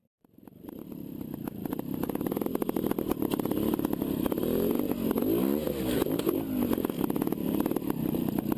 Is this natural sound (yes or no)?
yes